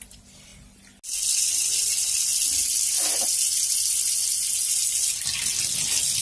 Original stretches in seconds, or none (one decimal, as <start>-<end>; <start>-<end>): 0.5-1.4; 2.3-6.2